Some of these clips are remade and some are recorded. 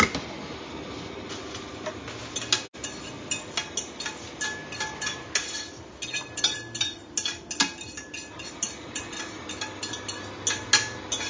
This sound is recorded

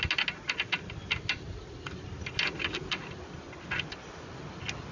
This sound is recorded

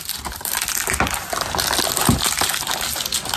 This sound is recorded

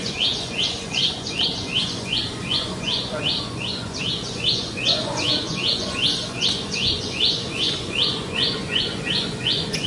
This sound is remade